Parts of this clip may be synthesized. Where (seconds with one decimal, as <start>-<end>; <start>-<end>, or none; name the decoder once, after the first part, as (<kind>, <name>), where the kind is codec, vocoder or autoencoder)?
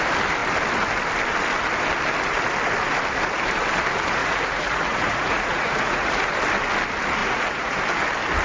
4.2-6.3 (vocoder, Vocos); 7.2-7.8